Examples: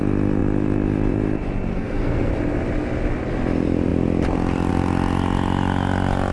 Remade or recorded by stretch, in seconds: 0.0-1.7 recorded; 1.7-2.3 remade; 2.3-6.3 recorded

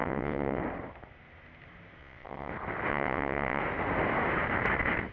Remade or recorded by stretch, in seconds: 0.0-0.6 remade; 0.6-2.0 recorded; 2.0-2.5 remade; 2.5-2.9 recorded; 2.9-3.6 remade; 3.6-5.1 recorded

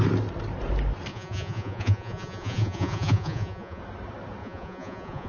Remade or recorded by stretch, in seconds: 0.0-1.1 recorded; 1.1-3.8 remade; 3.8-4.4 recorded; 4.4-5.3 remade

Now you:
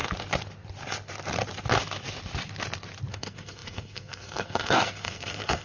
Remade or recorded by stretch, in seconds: 0.0-3.1 recorded; 3.1-5.6 remade

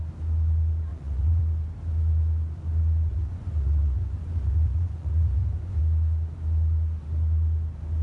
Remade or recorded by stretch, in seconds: 0.0-0.9 recorded; 0.9-1.4 remade; 1.4-3.1 recorded; 3.1-5.8 remade; 5.8-8.0 recorded

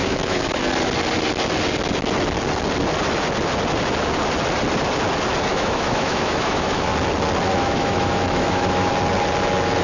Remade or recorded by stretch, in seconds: 0.0-0.6 remade; 0.6-5.5 recorded; 5.5-6.9 remade; 6.9-7.6 recorded; 7.6-8.9 remade; 8.9-9.8 recorded

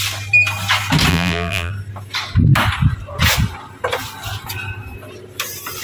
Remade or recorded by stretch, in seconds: 0.0-1.1 recorded; 1.1-1.7 remade; 1.7-5.8 recorded

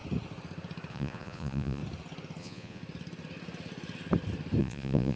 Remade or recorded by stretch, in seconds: 0.0-0.9 recorded; 0.9-1.8 remade; 1.8-2.4 recorded; 2.4-2.8 remade; 2.8-4.6 recorded; 4.6-5.2 remade